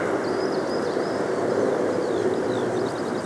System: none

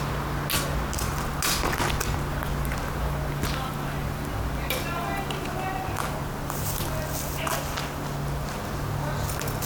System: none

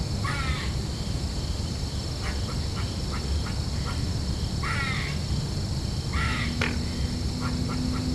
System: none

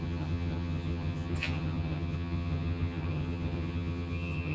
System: vocoder, HiFi-GAN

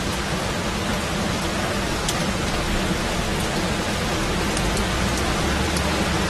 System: none